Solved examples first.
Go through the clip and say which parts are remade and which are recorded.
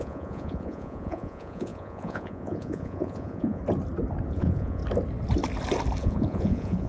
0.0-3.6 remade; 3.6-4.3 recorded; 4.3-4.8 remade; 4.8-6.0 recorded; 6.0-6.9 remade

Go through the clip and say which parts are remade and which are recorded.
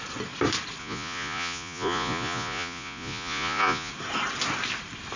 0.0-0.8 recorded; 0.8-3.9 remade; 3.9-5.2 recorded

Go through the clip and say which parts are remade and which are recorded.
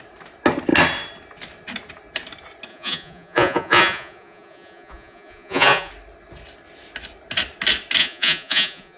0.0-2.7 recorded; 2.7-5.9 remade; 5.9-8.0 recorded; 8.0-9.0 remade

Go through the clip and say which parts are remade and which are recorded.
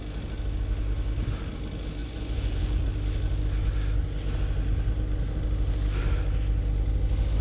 0.0-2.0 recorded; 2.0-2.8 remade; 2.8-7.4 recorded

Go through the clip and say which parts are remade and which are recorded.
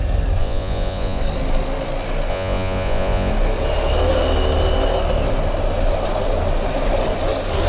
0.0-0.4 recorded; 0.4-1.2 remade; 1.2-2.3 recorded; 2.3-3.3 remade; 3.3-7.7 recorded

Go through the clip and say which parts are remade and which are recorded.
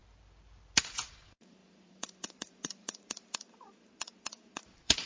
0.0-0.8 recorded; 0.8-5.1 remade